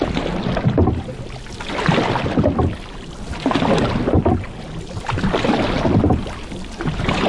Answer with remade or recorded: recorded